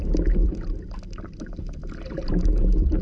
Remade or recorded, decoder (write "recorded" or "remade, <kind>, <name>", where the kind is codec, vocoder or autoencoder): recorded